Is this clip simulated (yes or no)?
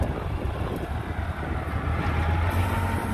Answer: no